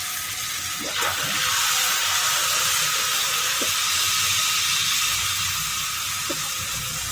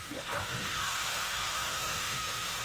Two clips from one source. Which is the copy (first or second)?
second